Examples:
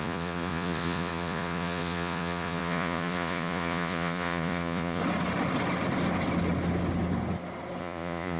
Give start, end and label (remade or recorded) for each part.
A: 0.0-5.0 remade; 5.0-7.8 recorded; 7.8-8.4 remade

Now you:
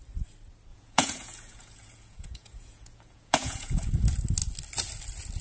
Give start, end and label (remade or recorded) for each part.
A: 0.0-0.7 recorded; 0.7-3.9 remade; 3.9-5.4 recorded

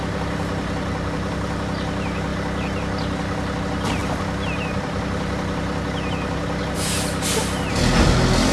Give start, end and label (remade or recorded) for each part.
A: 0.0-8.5 recorded

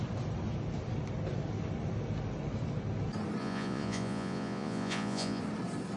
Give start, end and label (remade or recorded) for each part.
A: 0.0-3.4 recorded; 3.4-5.4 remade; 5.4-6.0 recorded

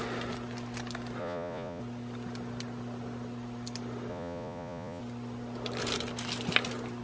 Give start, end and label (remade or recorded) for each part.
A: 0.0-1.2 recorded; 1.2-1.8 remade; 1.8-4.1 recorded; 4.1-5.0 remade; 5.0-7.0 recorded

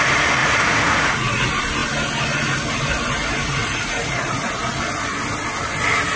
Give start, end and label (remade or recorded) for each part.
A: 0.0-0.4 recorded; 0.4-1.4 remade; 1.4-3.6 recorded; 3.6-4.5 remade; 4.5-6.2 recorded

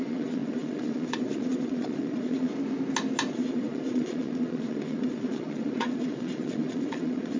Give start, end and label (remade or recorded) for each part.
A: 0.0-2.5 remade; 2.5-3.3 recorded; 3.3-7.4 remade

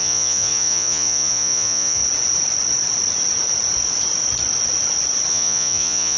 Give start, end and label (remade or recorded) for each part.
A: 0.0-2.0 remade; 2.0-5.3 recorded; 5.3-6.2 remade